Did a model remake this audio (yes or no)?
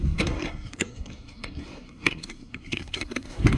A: yes